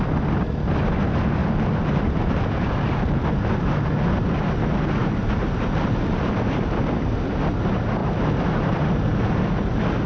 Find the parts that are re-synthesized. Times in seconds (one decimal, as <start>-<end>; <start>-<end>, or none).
1.4-3.7; 5.0-6.3; 8.0-8.8